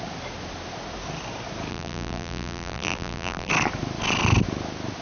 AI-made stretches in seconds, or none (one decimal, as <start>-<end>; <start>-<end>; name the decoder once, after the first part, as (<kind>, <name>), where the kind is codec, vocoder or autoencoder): 1.7-3.5 (vocoder, BigVGAN v2)